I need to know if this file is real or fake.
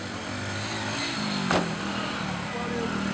real